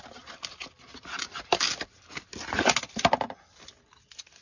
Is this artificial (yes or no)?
no